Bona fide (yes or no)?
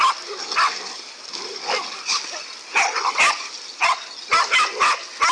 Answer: yes